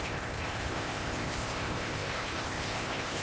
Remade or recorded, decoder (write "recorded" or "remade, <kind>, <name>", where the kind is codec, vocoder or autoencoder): remade, codec, ZipCodec